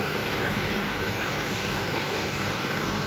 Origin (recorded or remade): remade